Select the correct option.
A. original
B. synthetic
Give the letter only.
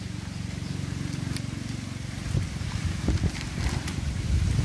A